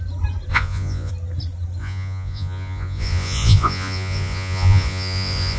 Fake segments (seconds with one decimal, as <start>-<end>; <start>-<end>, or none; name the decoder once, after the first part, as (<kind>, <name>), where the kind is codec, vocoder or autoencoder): 0.5-1.1 (vocoder, Vocos); 1.8-5.6